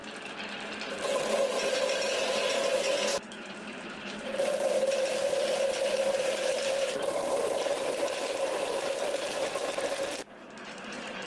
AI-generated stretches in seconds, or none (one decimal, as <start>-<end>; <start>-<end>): 3.1-5.4; 6.5-11.3